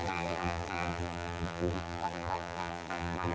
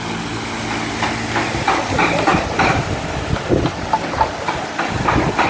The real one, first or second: second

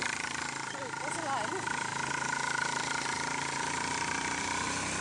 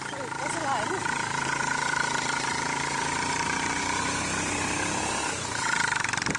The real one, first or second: first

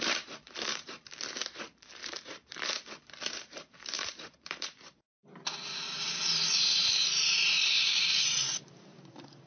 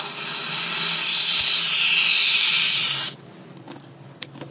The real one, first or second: second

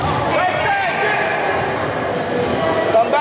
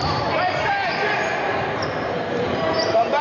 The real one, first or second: first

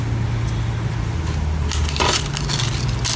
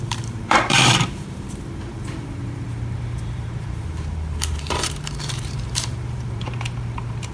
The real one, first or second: first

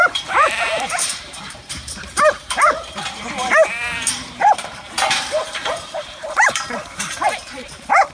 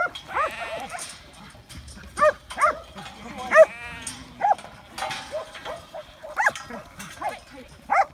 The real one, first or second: second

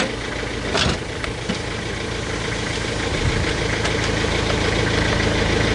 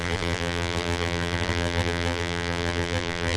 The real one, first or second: first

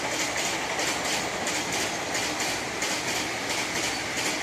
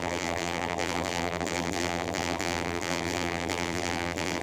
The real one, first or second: first